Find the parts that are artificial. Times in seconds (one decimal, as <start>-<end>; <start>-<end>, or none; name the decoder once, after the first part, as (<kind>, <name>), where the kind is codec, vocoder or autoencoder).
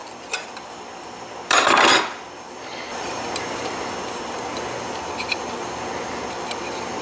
0.0-4.2 (vocoder, BigVGAN v2)